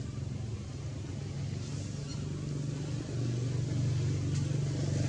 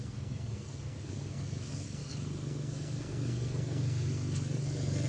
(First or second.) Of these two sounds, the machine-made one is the second